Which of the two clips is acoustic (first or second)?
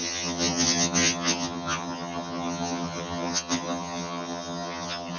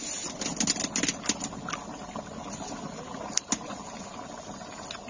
second